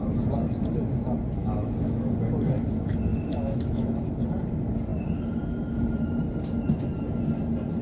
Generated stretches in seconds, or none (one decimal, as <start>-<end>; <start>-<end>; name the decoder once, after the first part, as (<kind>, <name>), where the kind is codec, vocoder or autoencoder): 1.4-2.1 (autoencoder, DAC-VAE); 3.1-4.0